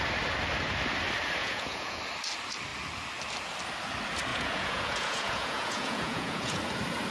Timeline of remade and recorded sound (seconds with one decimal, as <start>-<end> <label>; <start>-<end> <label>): 0.0-1.4 recorded; 1.4-2.0 remade; 2.0-4.3 recorded; 4.3-6.6 remade; 6.6-7.1 recorded